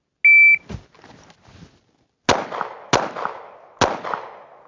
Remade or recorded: recorded